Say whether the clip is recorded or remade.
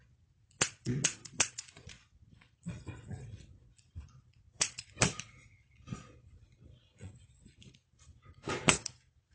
remade